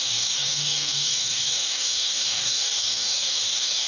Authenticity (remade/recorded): remade